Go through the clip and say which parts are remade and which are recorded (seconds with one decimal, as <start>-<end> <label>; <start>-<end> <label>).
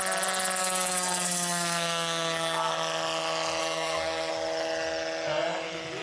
0.0-0.6 recorded; 0.6-2.7 remade; 2.7-3.6 recorded; 3.6-4.3 remade; 4.3-6.0 recorded